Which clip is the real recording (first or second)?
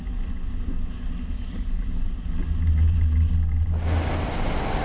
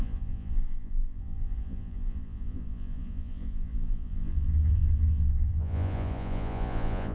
first